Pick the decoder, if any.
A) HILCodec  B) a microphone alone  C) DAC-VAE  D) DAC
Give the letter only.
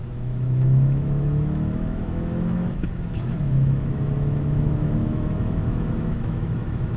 C